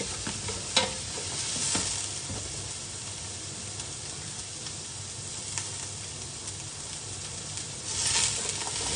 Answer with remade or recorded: recorded